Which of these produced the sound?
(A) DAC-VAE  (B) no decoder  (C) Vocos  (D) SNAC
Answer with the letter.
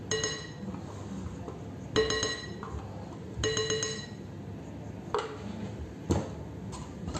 B